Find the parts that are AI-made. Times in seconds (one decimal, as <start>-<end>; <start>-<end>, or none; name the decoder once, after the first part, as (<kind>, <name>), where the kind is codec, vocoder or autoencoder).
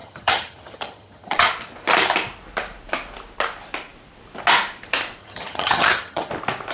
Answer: 0.0-1.5 (vocoder, HiFi-GAN); 5.2-6.3